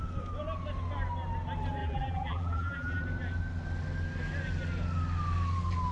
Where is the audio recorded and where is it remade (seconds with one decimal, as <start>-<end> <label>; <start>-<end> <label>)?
0.0-1.8 recorded; 1.8-3.0 remade; 3.0-5.9 recorded

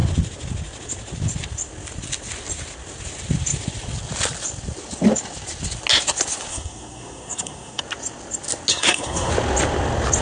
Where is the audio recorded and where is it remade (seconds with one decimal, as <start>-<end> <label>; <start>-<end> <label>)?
0.0-6.5 recorded; 6.5-7.8 remade; 7.8-8.7 recorded; 8.7-9.3 remade; 9.3-10.2 recorded

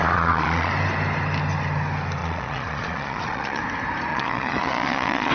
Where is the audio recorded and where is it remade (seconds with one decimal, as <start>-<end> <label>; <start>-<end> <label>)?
0.0-0.7 remade; 0.7-2.2 recorded; 2.2-3.6 remade; 3.6-4.1 recorded; 4.1-5.3 remade

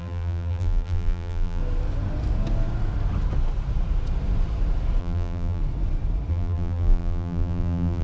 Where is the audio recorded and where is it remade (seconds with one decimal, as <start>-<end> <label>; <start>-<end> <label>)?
0.0-1.6 remade; 1.6-5.0 recorded; 5.0-5.6 remade; 5.6-6.3 recorded; 6.3-8.0 remade

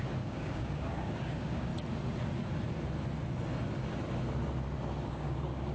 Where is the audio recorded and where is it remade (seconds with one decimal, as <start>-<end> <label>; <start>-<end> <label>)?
0.0-1.7 remade; 1.7-5.1 recorded; 5.1-5.7 remade

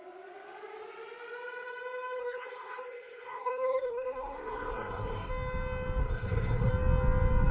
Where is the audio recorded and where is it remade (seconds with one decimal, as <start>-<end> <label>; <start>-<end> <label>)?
0.0-2.2 recorded; 2.2-5.3 remade; 5.3-6.0 recorded; 6.0-6.7 remade; 6.7-7.5 recorded